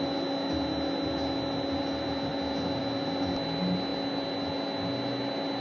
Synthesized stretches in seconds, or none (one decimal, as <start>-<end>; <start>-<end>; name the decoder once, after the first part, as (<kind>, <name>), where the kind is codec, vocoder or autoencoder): none